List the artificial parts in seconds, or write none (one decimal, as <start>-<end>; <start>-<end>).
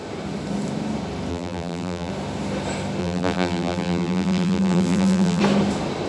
1.3-2.1; 3.0-5.4